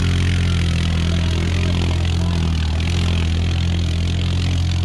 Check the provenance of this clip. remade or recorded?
recorded